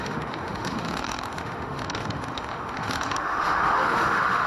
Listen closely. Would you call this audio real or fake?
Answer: fake